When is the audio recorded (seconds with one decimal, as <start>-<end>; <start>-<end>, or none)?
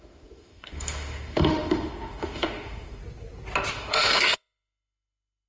3.0-3.7